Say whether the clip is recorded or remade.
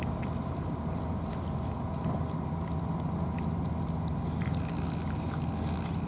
recorded